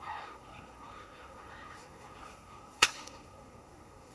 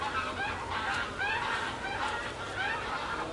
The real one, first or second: second